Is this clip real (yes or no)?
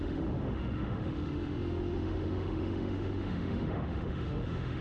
no